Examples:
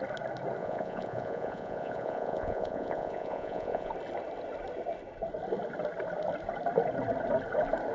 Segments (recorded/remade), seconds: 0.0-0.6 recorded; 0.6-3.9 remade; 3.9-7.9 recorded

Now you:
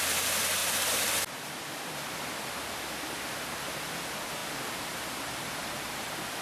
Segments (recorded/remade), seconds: 0.0-6.4 recorded

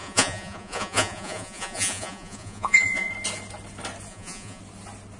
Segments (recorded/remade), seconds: 0.0-3.1 remade; 3.1-4.1 recorded; 4.1-4.6 remade; 4.6-5.2 recorded

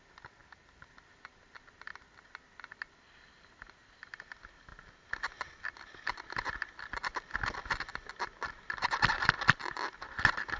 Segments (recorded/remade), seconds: 0.0-10.6 recorded

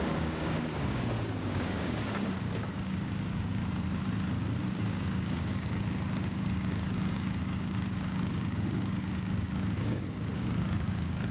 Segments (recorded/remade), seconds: 0.0-3.6 remade; 3.6-4.6 recorded; 4.6-11.3 remade

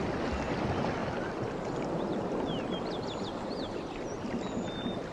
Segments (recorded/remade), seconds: 0.0-5.1 recorded

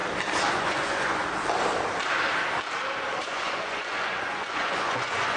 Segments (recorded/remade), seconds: 0.0-0.5 recorded; 0.5-1.2 remade; 1.2-3.2 recorded; 3.2-5.4 remade